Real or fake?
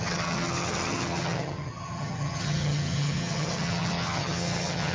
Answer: fake